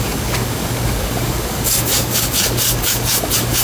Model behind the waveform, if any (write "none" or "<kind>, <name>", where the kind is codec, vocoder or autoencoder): codec, DAC